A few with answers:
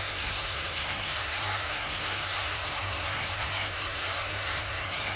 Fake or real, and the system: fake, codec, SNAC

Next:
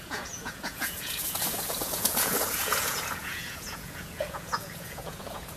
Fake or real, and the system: fake, vocoder, Vocos